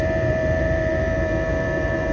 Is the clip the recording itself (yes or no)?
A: no